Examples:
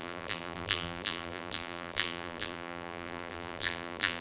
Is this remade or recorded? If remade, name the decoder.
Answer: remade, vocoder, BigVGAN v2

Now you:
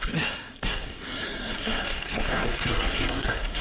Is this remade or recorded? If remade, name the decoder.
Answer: remade, codec, SNAC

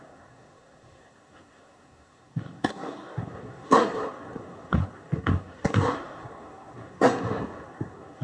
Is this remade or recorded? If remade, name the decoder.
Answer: remade, codec, SNAC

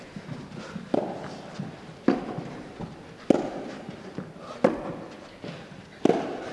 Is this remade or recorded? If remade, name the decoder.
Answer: recorded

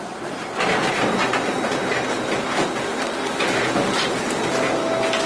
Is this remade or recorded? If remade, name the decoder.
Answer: recorded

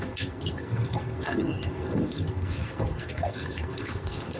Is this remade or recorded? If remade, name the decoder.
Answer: remade, codec, SNAC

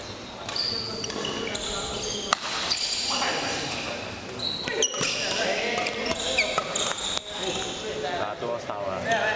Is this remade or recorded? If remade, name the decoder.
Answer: recorded